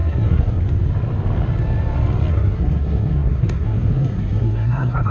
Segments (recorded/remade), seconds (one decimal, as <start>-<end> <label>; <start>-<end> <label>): 0.0-0.6 remade; 0.6-2.3 recorded; 2.3-5.1 remade